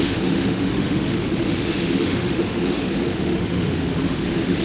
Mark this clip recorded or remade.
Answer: remade